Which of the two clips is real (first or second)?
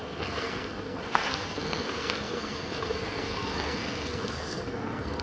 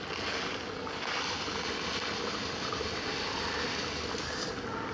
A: second